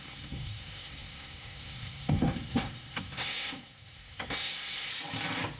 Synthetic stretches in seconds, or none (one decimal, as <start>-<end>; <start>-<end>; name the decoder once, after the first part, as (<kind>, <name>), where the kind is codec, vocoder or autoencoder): 0.0-4.9 (codec, SNAC)